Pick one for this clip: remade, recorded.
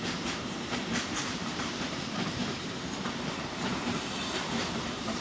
remade